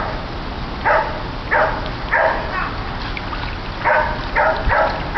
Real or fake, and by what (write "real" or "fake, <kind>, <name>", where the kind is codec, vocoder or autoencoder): real